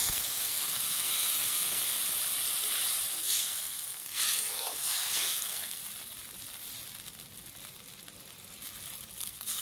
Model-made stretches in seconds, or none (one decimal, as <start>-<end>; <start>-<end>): 0.0-2.0; 3.1-5.8; 9.2-9.6